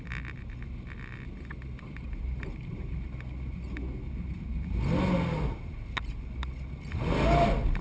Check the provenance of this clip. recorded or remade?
recorded